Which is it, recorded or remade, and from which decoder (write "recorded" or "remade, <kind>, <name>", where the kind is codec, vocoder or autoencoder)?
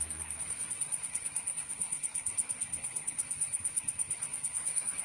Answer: remade, codec, SNAC